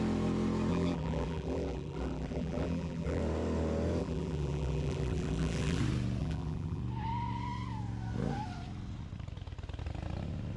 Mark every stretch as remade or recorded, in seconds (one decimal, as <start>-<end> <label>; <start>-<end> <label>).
0.0-0.7 recorded; 0.7-3.2 remade; 3.2-4.0 recorded; 4.0-5.8 remade; 5.8-6.2 recorded; 6.2-6.8 remade; 6.8-10.6 recorded